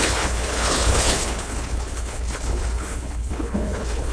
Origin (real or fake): fake